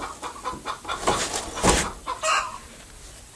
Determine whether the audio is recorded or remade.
recorded